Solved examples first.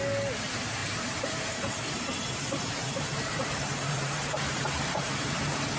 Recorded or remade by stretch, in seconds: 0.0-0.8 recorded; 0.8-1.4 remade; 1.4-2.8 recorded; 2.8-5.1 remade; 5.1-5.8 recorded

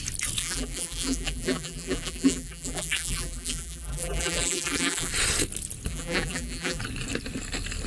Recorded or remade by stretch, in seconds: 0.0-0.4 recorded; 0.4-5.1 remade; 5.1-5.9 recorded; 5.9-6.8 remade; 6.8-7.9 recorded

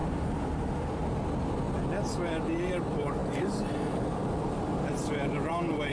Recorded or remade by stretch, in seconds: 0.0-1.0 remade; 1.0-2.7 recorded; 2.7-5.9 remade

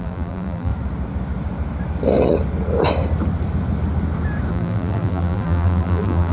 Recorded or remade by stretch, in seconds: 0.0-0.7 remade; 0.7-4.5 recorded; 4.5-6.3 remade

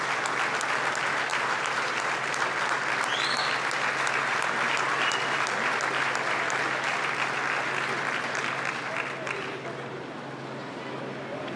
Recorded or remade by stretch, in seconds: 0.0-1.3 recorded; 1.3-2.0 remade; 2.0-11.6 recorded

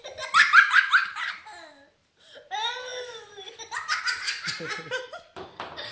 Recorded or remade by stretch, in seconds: 0.0-5.9 remade

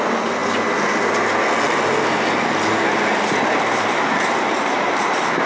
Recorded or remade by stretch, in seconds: 0.0-5.5 recorded